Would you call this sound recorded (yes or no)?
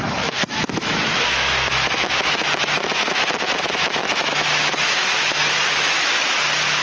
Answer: no